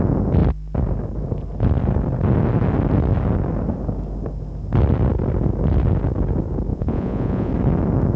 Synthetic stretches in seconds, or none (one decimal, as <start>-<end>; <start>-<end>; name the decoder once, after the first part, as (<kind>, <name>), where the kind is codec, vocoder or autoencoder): 6.7-7.5 (vocoder, Vocos)